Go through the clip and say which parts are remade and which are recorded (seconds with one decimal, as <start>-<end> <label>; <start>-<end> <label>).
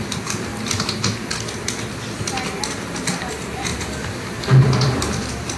0.0-0.5 remade; 0.5-3.3 recorded; 3.3-3.7 remade; 3.7-4.6 recorded; 4.6-5.6 remade